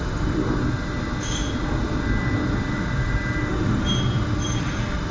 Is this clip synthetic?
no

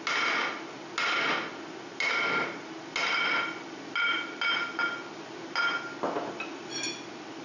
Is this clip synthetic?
no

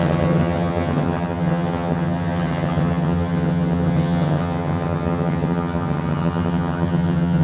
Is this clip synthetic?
yes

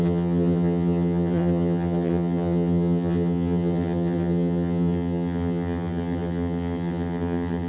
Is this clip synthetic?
yes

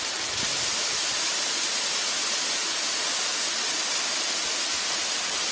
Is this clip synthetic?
no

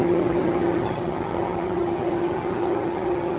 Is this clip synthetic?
yes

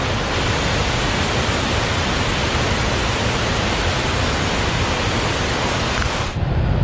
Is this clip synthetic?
no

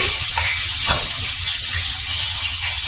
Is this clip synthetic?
yes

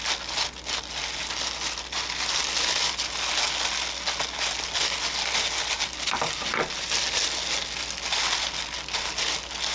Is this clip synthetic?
no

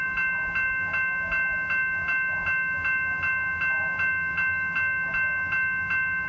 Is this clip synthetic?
no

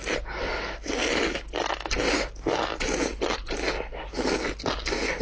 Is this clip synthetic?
no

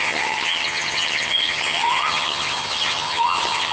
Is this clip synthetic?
yes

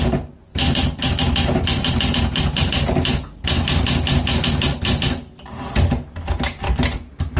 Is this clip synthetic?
no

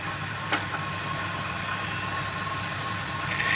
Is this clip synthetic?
no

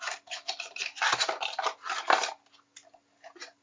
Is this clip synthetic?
no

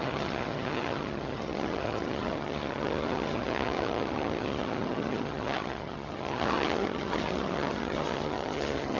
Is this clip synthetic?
yes